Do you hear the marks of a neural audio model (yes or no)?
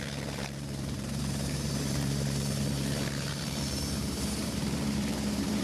yes